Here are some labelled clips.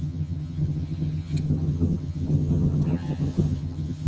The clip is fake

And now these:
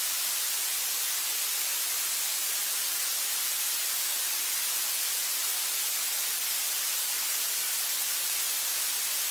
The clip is real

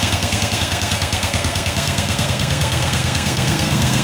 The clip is fake